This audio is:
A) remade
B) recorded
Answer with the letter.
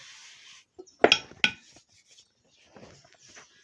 B